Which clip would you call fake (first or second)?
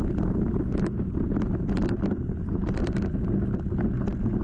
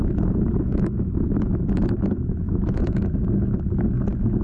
second